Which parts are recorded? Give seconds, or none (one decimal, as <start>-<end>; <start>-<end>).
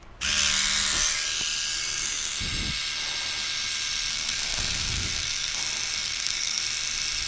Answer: 0.0-1.8; 2.4-4.1; 5.6-6.0; 6.6-7.3